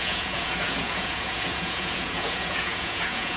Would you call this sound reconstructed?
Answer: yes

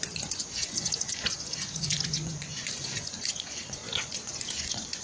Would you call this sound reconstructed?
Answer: yes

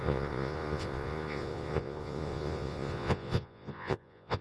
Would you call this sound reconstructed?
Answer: yes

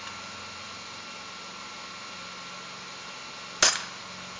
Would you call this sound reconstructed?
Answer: no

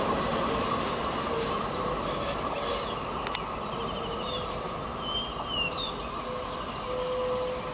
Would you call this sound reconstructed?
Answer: no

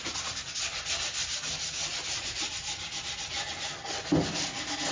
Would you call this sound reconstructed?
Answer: no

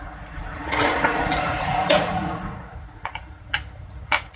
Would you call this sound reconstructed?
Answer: yes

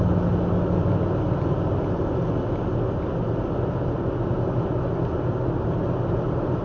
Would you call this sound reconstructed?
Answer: no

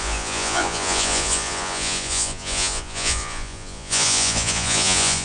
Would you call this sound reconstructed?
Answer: yes